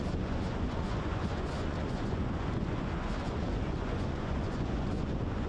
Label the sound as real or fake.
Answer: fake